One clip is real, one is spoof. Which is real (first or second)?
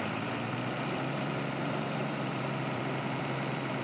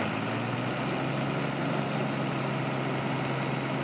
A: second